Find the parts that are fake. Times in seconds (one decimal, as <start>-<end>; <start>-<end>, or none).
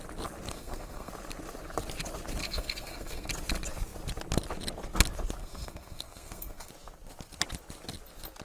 0.5-1.1; 2.4-3.3; 5.4-6.7